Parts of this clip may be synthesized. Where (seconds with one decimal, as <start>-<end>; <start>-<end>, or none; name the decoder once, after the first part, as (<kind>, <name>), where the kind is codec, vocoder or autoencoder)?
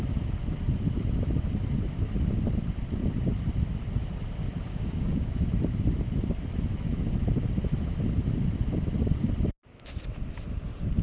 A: 4.7-5.4 (codec, DAC)